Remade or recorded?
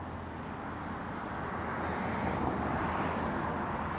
recorded